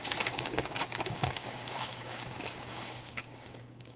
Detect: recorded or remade remade